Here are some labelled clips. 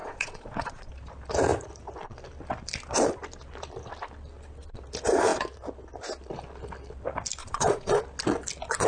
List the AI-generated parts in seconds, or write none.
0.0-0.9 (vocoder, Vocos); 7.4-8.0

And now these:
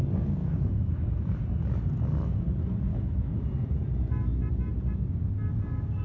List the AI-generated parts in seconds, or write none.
0.4-0.9 (autoencoder, DAC-VAE); 2.9-3.4

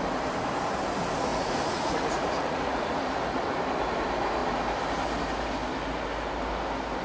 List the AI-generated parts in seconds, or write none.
1.3-3.0 (vocoder, Vocos)

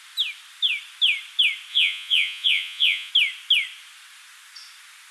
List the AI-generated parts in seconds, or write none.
1.7-3.1 (vocoder, Vocos)